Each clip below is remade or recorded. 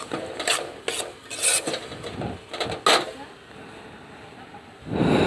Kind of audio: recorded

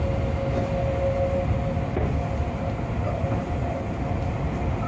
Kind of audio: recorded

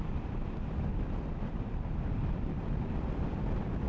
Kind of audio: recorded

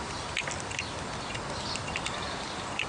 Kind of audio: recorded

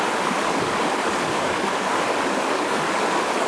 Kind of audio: remade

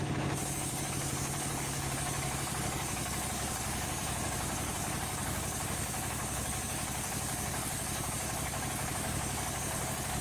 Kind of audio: remade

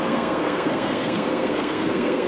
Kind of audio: remade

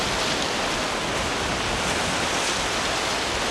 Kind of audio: recorded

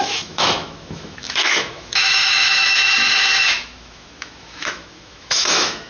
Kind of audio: remade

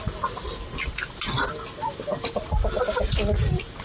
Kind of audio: recorded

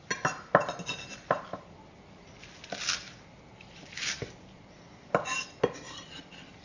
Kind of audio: recorded